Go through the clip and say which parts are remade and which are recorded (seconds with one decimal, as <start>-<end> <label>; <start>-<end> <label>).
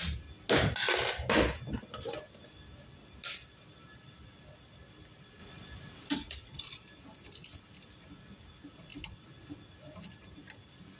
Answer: 0.0-5.4 recorded; 5.4-6.1 remade; 6.1-11.0 recorded